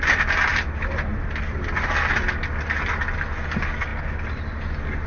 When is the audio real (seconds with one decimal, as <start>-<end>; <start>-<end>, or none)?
0.0-0.5; 2.1-5.1

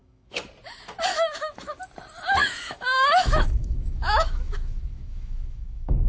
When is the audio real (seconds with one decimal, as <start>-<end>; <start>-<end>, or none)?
0.5-1.1; 1.8-2.4

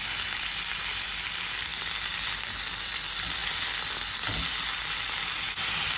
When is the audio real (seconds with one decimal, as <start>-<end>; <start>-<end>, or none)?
0.0-6.0

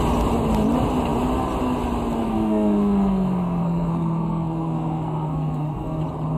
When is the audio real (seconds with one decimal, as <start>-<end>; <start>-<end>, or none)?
0.0-2.2; 6.0-6.4

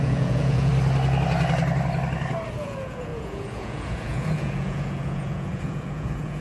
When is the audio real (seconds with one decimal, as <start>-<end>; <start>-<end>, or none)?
0.7-2.6

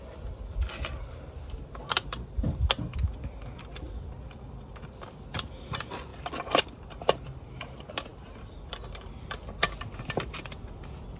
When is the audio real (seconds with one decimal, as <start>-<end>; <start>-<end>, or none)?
0.0-11.2

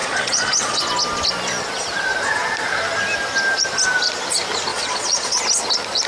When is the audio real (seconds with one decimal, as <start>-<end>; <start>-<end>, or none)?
0.8-4.7; 5.4-6.1

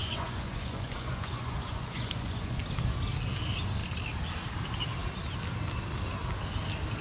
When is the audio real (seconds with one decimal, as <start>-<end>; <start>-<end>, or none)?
2.6-7.0